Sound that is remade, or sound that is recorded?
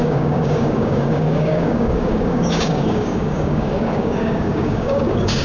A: remade